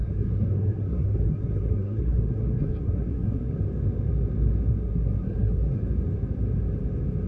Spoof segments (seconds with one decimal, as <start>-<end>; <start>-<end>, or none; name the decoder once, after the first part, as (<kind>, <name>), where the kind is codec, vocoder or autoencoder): 0.0-3.5 (codec, SNAC); 4.7-5.8